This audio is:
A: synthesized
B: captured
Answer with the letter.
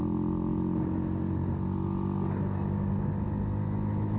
B